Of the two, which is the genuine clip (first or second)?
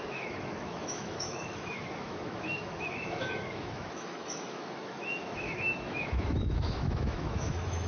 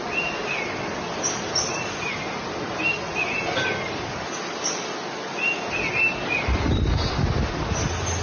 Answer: second